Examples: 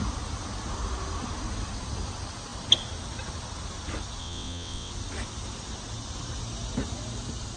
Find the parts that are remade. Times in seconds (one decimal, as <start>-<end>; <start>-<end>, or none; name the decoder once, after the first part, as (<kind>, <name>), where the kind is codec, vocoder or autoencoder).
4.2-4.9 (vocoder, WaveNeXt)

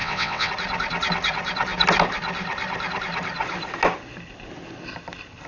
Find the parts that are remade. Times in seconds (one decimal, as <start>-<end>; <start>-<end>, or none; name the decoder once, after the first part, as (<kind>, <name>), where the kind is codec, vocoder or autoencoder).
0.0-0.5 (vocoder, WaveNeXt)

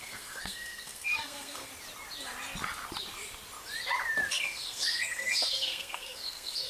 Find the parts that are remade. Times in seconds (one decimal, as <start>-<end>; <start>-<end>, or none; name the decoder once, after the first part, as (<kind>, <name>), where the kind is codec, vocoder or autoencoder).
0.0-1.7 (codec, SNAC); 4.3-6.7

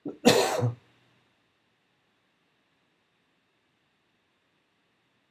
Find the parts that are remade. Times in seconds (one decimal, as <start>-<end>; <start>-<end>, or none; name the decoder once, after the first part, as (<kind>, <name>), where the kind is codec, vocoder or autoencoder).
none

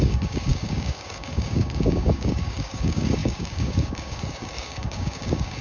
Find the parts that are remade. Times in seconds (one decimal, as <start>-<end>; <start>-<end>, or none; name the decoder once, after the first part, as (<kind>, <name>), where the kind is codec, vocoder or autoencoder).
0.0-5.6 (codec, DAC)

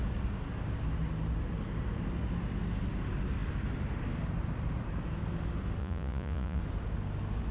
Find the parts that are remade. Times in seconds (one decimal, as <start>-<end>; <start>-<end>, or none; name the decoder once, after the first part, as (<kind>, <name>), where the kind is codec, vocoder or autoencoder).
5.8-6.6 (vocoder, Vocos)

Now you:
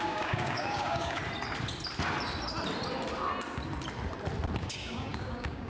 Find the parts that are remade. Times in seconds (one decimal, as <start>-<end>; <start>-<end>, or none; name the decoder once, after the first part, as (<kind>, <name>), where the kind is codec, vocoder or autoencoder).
0.0-1.2 (codec, DAC); 4.6-5.7

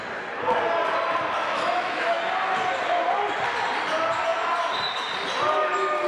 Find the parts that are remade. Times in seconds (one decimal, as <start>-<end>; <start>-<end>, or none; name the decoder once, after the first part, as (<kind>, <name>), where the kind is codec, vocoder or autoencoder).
1.4-2.2 (autoencoder, DAC-VAE)